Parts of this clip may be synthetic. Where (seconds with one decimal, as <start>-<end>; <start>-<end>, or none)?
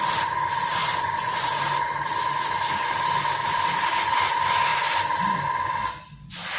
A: 0.8-1.5